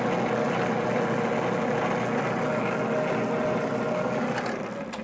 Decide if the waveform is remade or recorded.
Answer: recorded